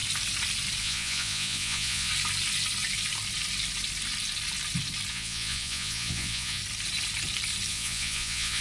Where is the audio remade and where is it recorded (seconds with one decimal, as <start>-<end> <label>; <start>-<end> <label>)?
0.0-0.8 recorded; 0.8-2.1 remade; 2.1-5.1 recorded; 5.1-6.6 remade; 6.6-7.7 recorded; 7.7-8.6 remade